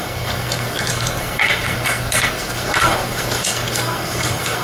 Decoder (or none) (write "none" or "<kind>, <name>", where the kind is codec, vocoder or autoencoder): codec, SNAC